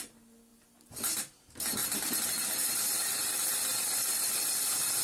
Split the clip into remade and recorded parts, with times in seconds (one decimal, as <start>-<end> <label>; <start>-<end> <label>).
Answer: 0.0-5.0 recorded